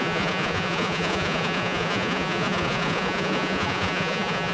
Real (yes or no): no